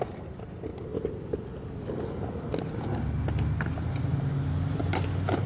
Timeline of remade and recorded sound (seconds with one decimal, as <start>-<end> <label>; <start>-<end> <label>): 0.0-5.5 recorded